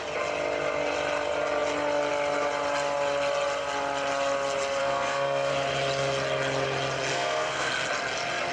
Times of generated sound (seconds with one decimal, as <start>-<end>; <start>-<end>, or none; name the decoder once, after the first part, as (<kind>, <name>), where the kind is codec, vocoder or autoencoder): 4.8-5.5 (codec, SNAC); 7.1-7.7